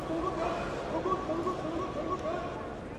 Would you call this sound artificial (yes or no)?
no